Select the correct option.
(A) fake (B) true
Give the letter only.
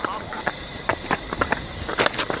B